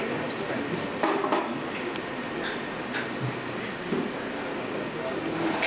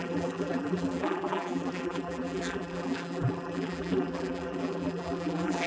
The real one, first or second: first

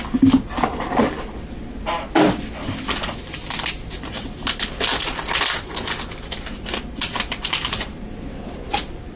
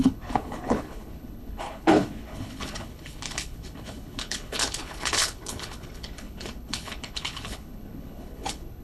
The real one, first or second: first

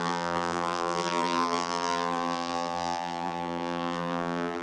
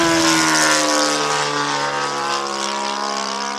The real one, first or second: second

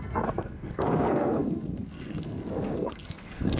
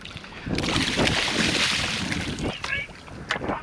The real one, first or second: second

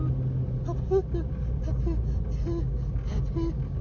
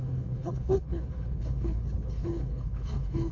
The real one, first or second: first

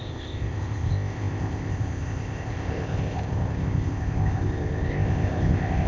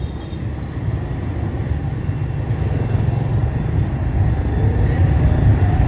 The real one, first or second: second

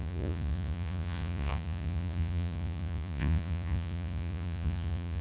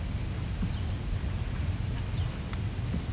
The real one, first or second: second